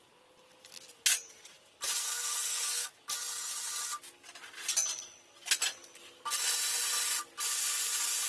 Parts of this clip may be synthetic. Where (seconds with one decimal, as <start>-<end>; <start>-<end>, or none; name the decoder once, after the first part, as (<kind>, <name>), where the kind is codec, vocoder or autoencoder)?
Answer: 2.0-2.9 (codec, SNAC)

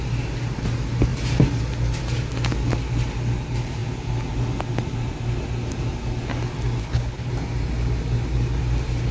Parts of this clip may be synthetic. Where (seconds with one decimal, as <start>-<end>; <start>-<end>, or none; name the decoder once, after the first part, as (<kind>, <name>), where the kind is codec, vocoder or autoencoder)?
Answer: 6.8-7.3 (codec, HILCodec)

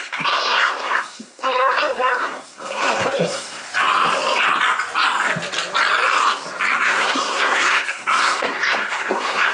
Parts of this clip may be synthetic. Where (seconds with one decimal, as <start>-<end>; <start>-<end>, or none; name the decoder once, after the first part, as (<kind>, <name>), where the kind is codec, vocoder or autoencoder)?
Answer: 0.0-3.7 (codec, SNAC); 6.8-9.5

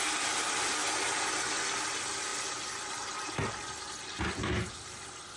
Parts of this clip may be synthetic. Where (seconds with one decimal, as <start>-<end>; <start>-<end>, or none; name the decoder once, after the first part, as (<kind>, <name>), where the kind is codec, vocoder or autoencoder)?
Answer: none

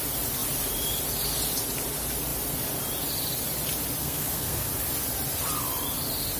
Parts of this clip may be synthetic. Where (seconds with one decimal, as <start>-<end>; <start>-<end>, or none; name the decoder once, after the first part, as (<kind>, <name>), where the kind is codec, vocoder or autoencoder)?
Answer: 4.0-4.7 (codec, SNAC)

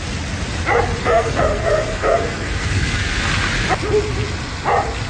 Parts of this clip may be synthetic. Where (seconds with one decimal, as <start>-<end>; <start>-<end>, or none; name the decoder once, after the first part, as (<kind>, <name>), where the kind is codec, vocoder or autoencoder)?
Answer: 1.0-3.3 (codec, SNAC)

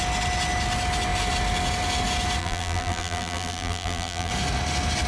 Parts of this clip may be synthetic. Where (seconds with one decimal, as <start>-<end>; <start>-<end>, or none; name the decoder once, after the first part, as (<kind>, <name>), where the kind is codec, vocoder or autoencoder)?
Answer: 2.4-4.3 (vocoder, BigVGAN v2)